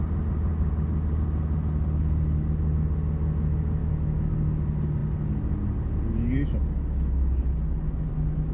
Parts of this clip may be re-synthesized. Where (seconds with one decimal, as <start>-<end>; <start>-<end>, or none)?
3.8-4.3